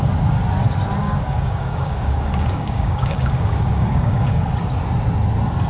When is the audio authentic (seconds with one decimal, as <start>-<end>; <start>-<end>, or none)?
0.0-1.0; 4.4-5.7